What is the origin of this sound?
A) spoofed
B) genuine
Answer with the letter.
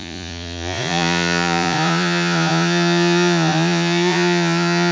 A